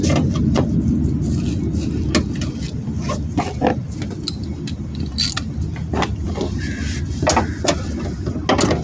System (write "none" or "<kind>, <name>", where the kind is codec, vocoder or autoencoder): none